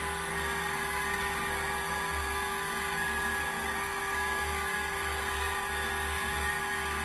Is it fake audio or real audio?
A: fake